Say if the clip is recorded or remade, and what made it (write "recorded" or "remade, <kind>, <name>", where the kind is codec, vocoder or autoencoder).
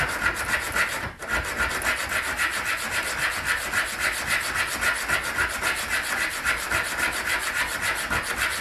recorded